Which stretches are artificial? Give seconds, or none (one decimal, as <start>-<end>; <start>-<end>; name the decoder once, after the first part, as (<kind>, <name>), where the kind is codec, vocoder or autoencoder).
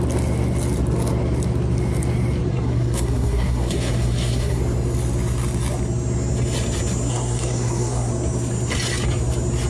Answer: 2.5-4.6 (codec, SNAC); 7.1-8.1